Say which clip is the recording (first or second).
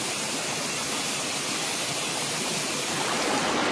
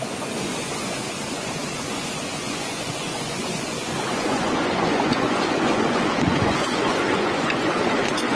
first